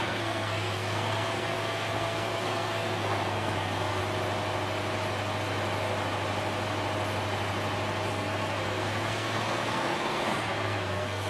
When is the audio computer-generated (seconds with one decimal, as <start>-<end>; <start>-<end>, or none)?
0.0-4.0; 8.1-11.3